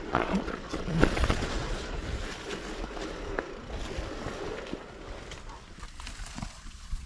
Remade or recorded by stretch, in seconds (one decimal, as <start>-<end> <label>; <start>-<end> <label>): 0.0-2.0 remade; 2.0-6.3 recorded; 6.3-7.1 remade